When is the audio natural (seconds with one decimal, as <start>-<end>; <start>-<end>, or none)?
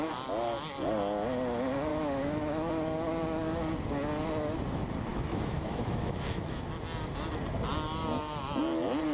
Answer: 0.0-1.9; 2.7-5.1; 6.6-9.1